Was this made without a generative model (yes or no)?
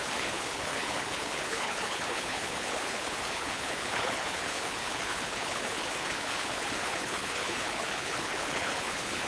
no